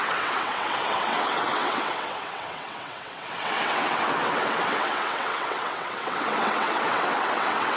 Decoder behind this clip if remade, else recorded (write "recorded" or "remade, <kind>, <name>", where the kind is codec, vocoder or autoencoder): remade, vocoder, WaveNeXt